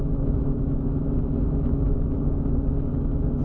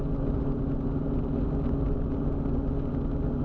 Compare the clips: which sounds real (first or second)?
second